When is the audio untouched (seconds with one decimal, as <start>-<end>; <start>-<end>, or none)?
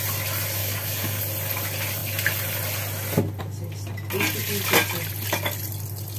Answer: 0.0-0.6; 1.2-6.2